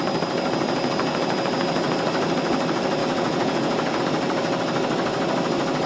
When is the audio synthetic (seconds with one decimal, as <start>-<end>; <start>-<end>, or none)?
3.0-4.0